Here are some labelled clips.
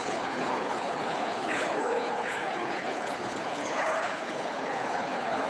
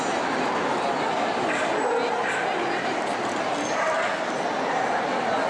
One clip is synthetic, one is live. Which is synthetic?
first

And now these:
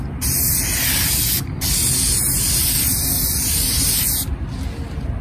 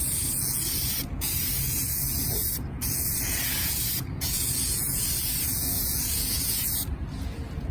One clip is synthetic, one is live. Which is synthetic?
second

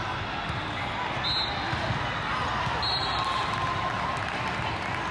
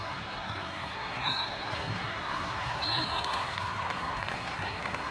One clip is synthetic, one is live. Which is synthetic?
second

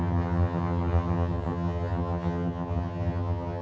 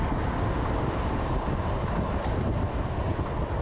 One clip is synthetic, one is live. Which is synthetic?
first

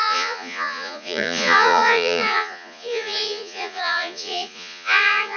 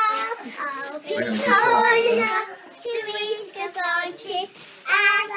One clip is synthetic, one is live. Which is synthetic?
first